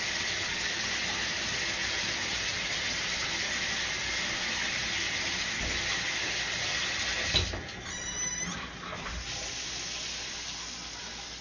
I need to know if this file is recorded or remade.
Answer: recorded